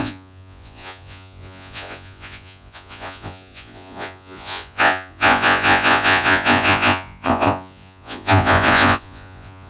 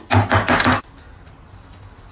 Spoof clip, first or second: first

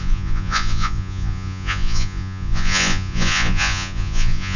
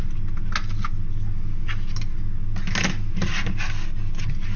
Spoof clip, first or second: first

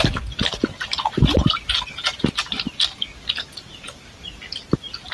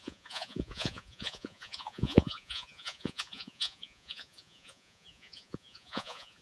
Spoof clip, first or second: second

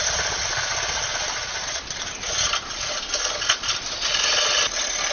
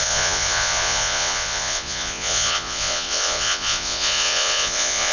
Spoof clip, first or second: second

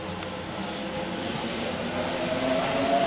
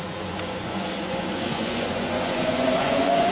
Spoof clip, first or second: second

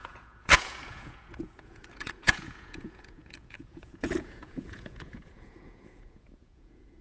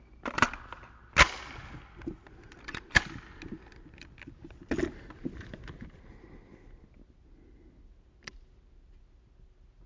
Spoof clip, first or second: first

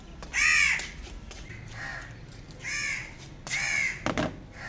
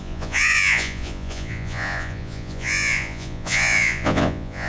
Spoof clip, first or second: second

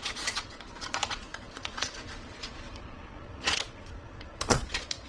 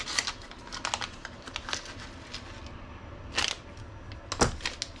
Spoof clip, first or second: first